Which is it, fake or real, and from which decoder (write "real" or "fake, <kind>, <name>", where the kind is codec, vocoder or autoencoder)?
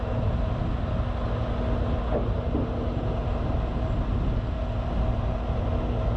real